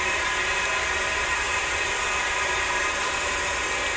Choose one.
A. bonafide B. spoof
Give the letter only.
A